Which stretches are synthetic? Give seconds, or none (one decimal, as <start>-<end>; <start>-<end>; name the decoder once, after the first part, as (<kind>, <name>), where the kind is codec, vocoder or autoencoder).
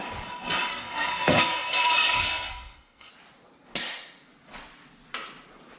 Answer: 0.7-3.1 (codec, SNAC)